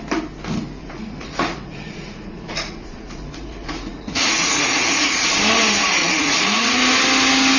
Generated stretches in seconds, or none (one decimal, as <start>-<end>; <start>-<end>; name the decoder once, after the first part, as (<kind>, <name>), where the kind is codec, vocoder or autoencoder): 0.8-5.3 (vocoder, Vocos); 6.0-6.8